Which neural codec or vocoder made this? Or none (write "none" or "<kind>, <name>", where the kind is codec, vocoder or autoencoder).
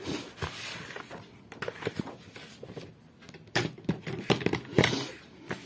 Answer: none